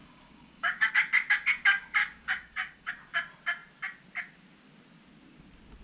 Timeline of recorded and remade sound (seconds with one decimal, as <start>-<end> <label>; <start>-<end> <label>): 0.0-0.9 remade; 0.9-2.0 recorded; 2.0-2.9 remade; 2.9-5.8 recorded